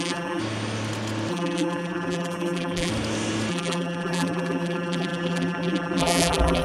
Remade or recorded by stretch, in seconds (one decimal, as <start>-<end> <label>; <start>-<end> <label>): 0.0-0.4 remade; 0.4-1.3 recorded; 1.3-2.9 remade; 2.9-3.5 recorded; 3.5-6.6 remade